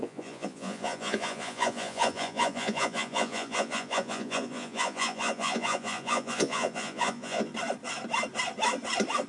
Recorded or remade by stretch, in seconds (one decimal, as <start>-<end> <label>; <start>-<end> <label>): 0.0-7.5 remade; 7.5-9.3 recorded